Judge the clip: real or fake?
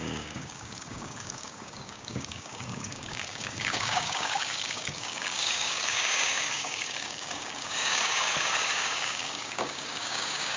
fake